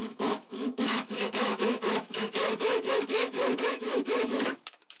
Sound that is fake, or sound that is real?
fake